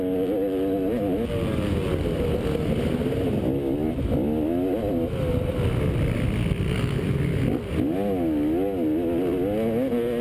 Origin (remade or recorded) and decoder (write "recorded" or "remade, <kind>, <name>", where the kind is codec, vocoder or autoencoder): recorded